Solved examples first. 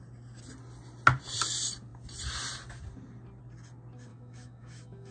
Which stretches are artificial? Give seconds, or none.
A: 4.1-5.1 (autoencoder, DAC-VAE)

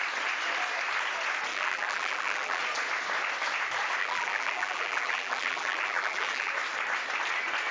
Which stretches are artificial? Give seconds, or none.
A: 1.5-2.6 (vocoder, BigVGAN v2); 4.0-6.5

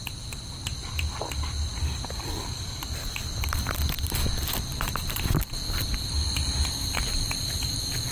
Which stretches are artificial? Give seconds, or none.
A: 0.0-3.0 (vocoder, BigVGAN v2); 3.8-8.1

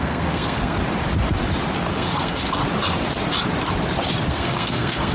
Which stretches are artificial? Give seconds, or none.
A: 0.0-0.8 (codec, SNAC); 1.9-2.6; 4.3-5.1